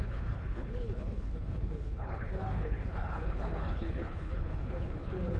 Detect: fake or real fake